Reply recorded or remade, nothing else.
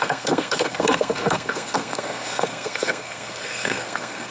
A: remade